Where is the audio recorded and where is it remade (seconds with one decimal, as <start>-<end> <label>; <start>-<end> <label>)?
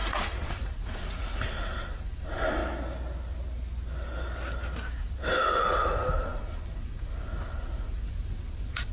0.0-2.6 remade; 2.6-5.0 recorded; 5.0-8.9 remade